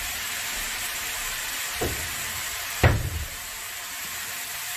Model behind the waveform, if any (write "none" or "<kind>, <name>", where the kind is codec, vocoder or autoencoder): vocoder, BigVGAN v2